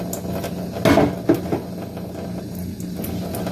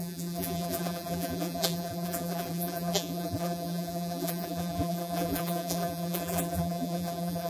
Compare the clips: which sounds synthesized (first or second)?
second